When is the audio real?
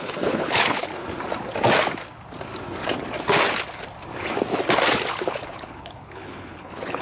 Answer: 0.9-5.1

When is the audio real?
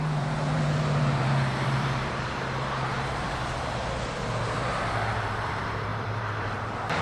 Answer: 3.8-4.8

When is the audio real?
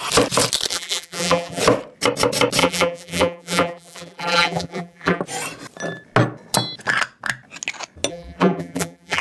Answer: 0.0-0.7; 1.6-2.6; 5.2-8.1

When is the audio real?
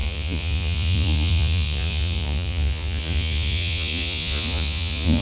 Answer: none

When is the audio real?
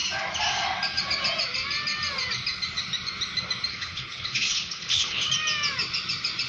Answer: 0.0-3.7; 5.3-6.5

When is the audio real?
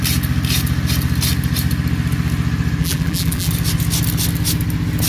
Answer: 0.0-2.8; 3.5-5.1